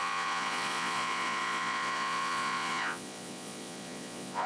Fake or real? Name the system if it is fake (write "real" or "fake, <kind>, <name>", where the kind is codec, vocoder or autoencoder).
fake, vocoder, Vocos